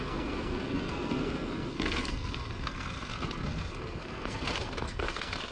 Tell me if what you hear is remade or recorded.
remade